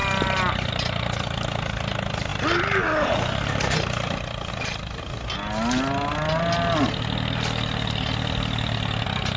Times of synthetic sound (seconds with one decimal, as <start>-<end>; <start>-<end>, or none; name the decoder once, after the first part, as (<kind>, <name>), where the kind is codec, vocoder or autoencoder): none

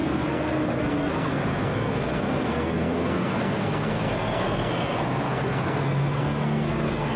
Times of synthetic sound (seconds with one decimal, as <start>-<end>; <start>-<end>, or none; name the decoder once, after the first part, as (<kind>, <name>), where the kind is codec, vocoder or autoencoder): 0.0-7.2 (codec, SNAC)

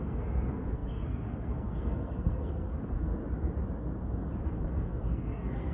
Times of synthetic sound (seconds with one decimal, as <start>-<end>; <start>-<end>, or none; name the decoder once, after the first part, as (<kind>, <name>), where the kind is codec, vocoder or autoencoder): 0.0-3.1 (codec, SNAC); 4.4-5.7

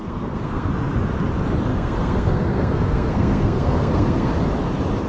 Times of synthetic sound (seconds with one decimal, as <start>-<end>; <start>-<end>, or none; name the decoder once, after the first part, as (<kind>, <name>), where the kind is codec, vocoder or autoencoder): 0.0-0.7 (codec, SNAC); 1.7-4.3

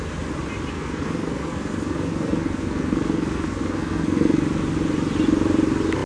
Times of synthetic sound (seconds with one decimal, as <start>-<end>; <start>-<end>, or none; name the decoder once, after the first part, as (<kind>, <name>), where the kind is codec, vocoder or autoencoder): 0.7-4.4 (codec, SNAC)

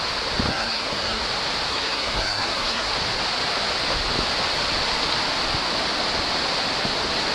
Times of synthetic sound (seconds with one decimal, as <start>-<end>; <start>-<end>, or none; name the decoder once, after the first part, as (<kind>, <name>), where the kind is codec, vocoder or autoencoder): 0.5-1.2 (codec, SNAC); 1.7-2.9